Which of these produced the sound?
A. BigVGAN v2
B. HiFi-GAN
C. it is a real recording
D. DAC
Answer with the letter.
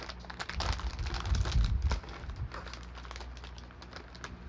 C